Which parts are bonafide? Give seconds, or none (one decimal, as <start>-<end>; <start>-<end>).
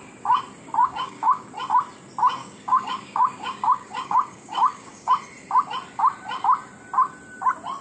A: 0.0-0.8; 1.5-2.4; 5.1-7.8